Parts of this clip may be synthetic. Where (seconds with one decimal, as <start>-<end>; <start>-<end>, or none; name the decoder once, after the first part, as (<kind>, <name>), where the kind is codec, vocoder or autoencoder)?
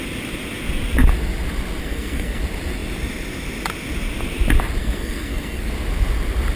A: 1.8-2.4 (codec, SNAC); 4.8-5.7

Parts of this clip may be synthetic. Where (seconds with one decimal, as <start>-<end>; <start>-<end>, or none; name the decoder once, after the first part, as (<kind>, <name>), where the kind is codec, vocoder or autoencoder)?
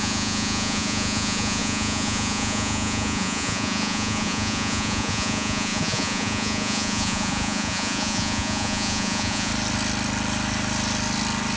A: 0.0-9.5 (vocoder, Vocos)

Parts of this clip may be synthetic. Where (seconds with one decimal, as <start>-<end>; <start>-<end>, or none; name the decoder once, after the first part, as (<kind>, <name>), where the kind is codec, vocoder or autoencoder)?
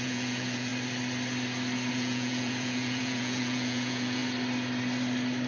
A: 0.0-0.7 (vocoder, Vocos); 1.9-4.2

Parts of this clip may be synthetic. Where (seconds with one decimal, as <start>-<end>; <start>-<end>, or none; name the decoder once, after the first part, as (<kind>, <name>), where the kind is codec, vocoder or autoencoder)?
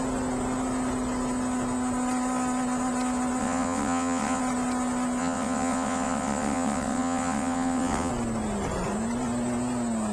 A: 3.4-4.4 (vocoder, WaveNeXt); 5.2-8.1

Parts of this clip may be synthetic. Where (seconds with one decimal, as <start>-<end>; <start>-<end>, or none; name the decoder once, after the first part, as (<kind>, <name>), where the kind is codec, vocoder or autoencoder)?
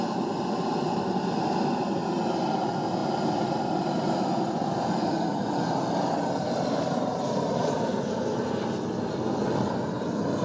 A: none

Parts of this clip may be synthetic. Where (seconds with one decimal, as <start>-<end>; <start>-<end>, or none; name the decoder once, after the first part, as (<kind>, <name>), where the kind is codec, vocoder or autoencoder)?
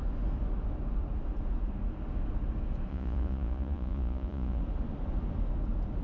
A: 2.9-4.6 (vocoder, Vocos)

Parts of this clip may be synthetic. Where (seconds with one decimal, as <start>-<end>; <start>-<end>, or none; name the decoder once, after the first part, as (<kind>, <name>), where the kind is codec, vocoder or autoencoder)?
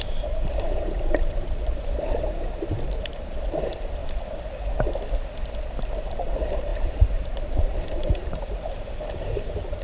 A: 0.0-4.0 (vocoder, BigVGAN v2); 6.0-9.8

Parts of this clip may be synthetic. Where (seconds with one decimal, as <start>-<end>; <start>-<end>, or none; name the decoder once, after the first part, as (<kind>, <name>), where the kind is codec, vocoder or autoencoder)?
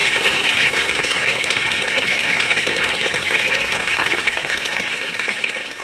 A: 0.0-5.8 (codec, SNAC)